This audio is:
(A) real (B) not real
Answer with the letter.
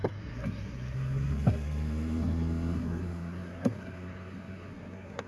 B